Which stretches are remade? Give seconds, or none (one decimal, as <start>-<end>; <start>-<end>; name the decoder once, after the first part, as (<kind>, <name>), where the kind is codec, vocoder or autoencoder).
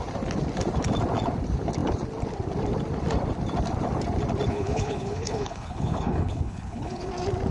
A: 4.5-7.1 (codec, HILCodec)